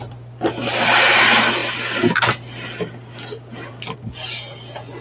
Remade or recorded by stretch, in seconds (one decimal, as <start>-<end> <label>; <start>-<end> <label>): 0.0-5.0 recorded